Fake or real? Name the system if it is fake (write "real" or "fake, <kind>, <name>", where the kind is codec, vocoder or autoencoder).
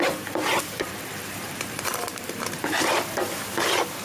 fake, vocoder, BigVGAN v2